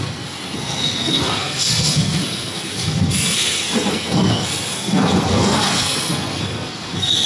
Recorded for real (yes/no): no